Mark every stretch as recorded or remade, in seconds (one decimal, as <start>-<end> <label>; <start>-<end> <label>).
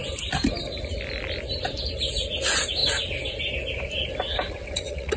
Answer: 0.0-4.6 recorded; 4.6-5.2 remade